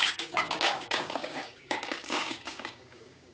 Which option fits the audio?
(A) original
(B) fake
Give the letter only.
B